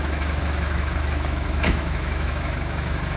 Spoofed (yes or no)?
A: yes